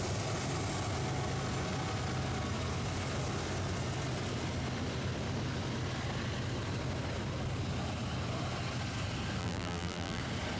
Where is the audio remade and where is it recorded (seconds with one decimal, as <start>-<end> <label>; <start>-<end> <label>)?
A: 0.0-9.4 recorded; 9.4-10.2 remade; 10.2-10.6 recorded